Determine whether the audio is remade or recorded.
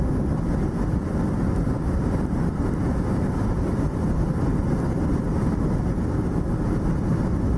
remade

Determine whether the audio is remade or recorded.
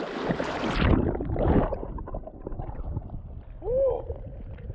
recorded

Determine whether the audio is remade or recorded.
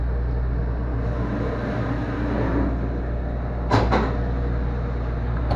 recorded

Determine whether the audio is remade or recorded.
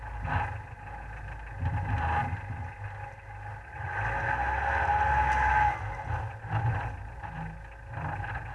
recorded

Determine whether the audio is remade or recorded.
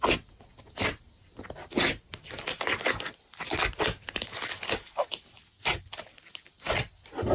recorded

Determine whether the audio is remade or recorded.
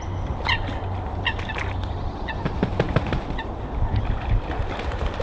recorded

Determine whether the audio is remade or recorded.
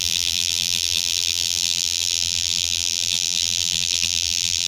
remade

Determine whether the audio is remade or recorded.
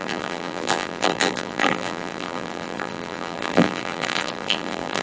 remade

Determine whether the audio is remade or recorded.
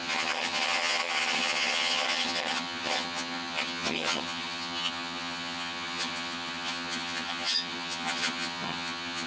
remade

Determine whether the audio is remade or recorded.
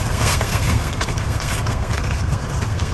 remade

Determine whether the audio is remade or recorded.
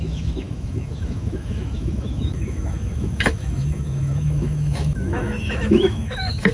remade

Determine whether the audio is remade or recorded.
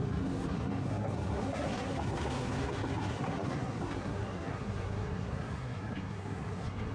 remade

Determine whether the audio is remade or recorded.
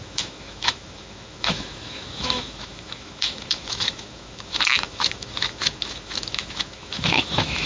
remade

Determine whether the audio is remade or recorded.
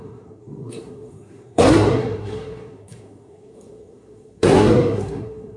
remade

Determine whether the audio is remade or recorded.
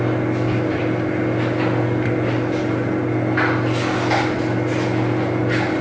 recorded